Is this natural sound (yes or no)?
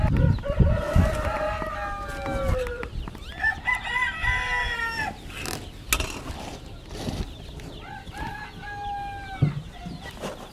yes